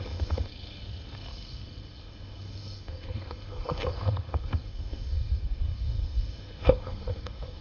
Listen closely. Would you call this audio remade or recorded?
remade